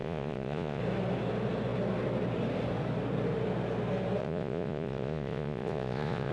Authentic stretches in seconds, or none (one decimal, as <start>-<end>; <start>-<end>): 0.8-4.2